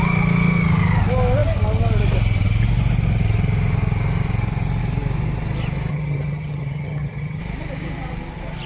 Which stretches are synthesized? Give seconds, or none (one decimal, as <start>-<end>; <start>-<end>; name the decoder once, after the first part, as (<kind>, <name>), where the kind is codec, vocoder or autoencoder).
5.9-7.4 (vocoder, HiFi-GAN)